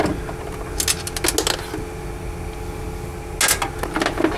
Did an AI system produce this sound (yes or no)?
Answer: no